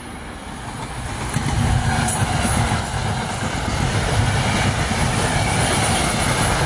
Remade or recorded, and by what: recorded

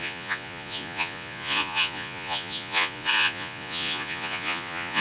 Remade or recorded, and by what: remade, vocoder, Vocos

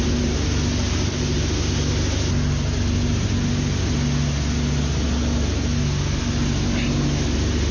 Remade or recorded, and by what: recorded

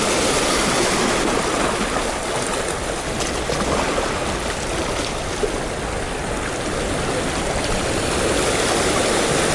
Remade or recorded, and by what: recorded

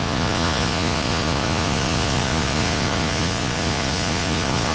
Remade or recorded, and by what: remade, vocoder, Vocos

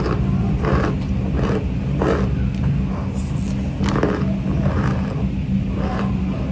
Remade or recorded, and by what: recorded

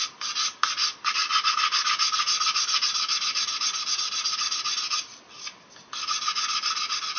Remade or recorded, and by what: recorded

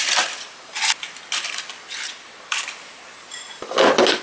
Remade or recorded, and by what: recorded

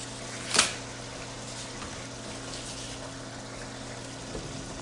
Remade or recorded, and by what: recorded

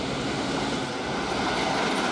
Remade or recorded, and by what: recorded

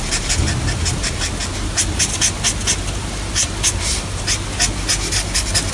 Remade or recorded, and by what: recorded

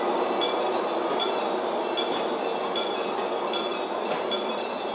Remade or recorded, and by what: recorded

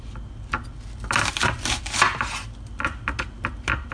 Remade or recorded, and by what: recorded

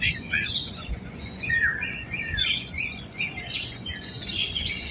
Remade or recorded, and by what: remade, vocoder, Vocos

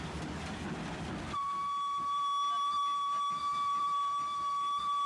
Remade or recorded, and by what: recorded